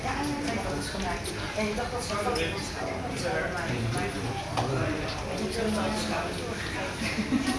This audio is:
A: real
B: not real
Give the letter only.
A